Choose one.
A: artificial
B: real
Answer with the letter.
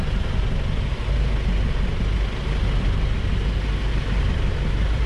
B